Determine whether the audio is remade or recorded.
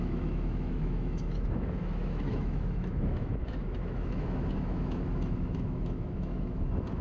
remade